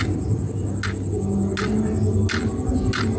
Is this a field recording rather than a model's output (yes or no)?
yes